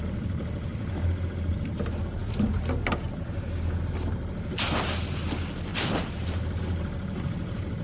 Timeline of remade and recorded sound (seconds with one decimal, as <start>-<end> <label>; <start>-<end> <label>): 0.0-7.8 recorded